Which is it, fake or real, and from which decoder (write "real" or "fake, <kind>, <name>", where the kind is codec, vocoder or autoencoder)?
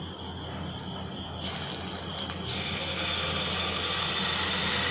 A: real